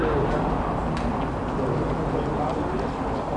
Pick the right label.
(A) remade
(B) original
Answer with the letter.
B